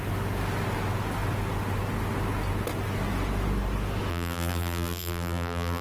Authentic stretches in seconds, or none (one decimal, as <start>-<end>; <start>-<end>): 0.0-4.1

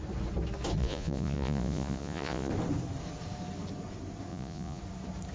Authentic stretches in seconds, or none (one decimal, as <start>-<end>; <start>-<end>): 0.0-0.8; 2.5-4.3; 4.8-5.3

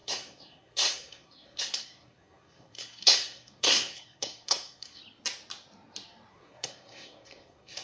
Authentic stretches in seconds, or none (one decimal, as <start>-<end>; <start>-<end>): 5.0-6.3

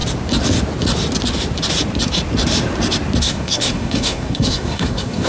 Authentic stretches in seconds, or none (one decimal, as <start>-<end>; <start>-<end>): 0.0-3.2

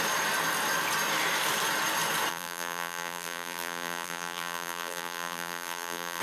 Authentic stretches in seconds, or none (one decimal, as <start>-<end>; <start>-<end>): 0.0-2.3

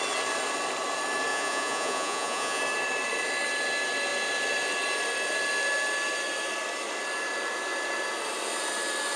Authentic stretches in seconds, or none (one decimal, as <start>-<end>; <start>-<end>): 0.0-1.3; 2.6-9.2

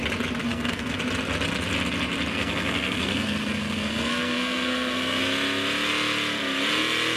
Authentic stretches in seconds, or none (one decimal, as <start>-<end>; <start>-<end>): 0.0-0.4; 1.0-2.3; 5.2-7.2